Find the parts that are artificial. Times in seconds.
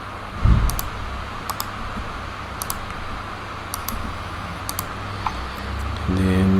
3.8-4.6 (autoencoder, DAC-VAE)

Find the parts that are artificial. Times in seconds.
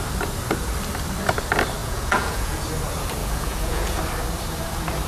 1.8-2.6 (vocoder, Vocos); 3.2-4.0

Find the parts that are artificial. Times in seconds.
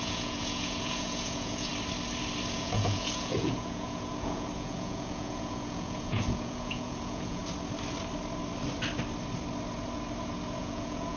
0.0-1.7 (vocoder, Vocos); 2.5-7.4; 10.6-11.2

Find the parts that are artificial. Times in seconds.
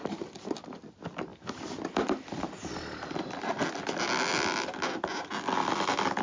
none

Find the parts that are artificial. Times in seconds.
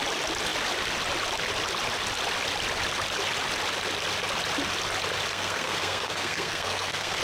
5.3-7.2 (codec, SNAC)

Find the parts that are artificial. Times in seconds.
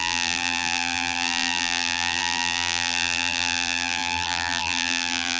0.0-5.4 (vocoder, BigVGAN v2)